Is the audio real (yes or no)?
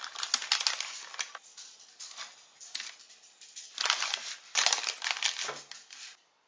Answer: yes